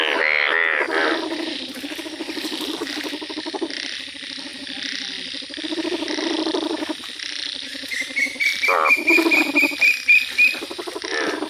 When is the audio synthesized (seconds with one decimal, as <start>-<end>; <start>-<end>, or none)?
none